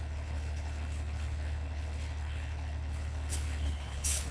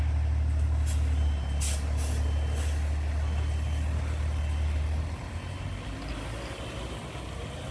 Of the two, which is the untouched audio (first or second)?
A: second